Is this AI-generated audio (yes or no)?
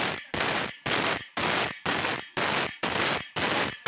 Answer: no